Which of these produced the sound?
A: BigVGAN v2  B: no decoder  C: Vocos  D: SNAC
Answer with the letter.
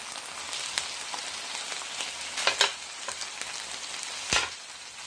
B